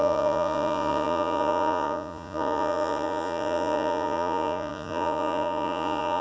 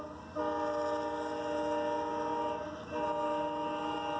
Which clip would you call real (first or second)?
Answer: second